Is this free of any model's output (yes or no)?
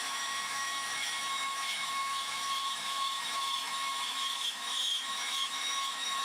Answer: no